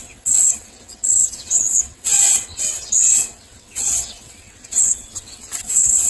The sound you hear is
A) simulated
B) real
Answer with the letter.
A